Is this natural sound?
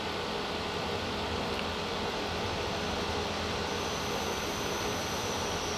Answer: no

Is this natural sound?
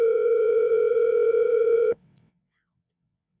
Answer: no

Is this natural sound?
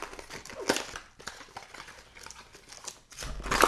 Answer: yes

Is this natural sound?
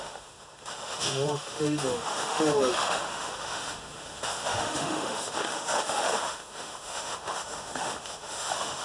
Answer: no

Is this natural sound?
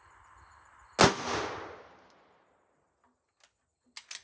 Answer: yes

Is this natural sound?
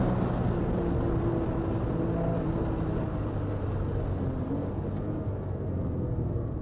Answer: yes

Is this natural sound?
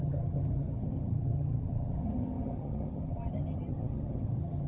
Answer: no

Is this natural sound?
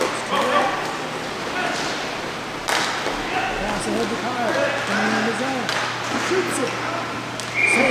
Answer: yes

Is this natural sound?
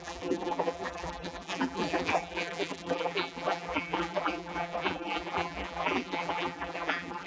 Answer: no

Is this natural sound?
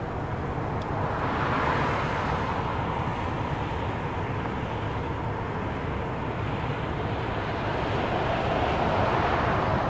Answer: yes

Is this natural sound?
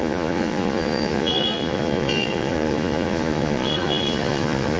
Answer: no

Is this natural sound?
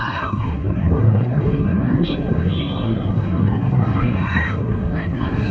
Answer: no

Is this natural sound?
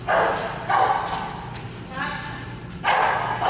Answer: yes